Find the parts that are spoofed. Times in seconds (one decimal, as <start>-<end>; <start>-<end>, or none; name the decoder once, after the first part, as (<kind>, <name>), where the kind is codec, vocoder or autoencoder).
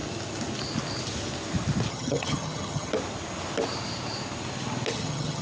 1.9-2.9 (vocoder, HiFi-GAN); 4.9-5.4